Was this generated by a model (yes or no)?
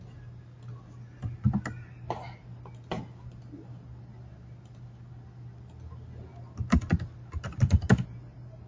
no